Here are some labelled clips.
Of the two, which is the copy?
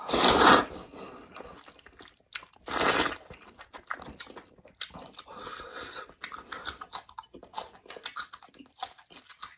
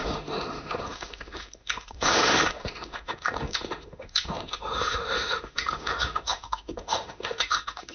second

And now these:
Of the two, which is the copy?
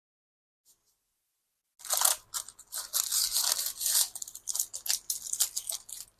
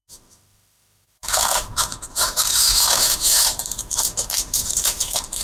second